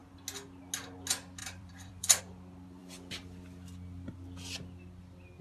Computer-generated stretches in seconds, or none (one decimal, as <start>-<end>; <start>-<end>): 1.4-2.2